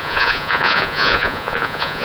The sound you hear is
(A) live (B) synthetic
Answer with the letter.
B